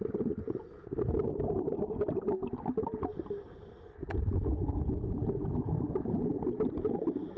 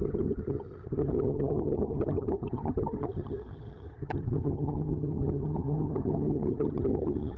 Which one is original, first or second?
first